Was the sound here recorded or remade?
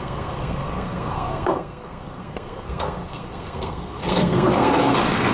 remade